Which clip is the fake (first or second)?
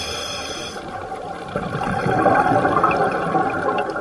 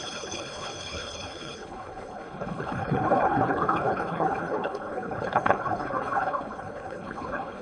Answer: second